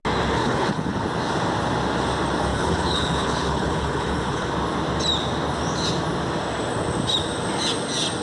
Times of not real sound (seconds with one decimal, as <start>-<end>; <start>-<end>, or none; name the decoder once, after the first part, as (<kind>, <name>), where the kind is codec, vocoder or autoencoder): 0.4-1.0 (codec, HILCodec); 2.5-4.5